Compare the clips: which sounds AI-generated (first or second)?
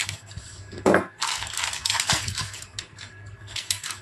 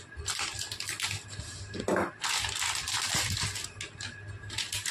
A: first